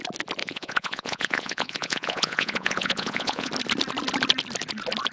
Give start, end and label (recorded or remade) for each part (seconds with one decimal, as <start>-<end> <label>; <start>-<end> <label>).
0.0-0.4 recorded; 0.4-3.5 remade; 3.5-5.1 recorded